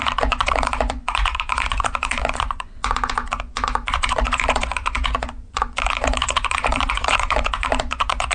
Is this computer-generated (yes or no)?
yes